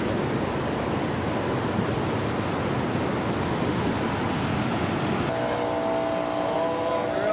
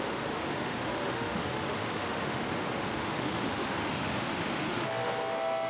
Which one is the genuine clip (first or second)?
first